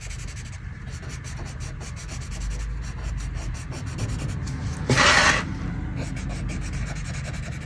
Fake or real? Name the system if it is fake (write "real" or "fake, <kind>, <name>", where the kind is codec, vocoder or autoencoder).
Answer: real